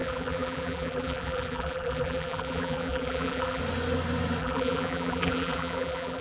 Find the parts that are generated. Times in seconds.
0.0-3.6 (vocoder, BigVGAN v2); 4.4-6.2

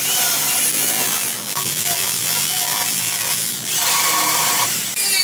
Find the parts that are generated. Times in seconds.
0.7-3.7 (vocoder, BigVGAN v2)

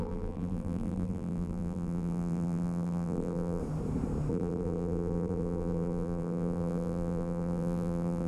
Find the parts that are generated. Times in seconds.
0.0-3.6 (vocoder, BigVGAN v2); 4.3-8.3

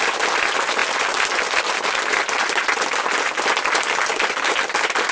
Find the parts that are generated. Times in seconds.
none

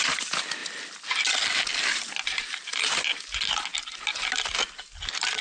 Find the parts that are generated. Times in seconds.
none

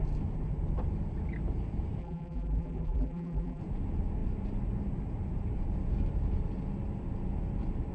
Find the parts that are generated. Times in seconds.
2.0-3.6 (vocoder, BigVGAN v2)

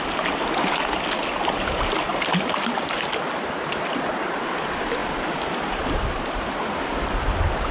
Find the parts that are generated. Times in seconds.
none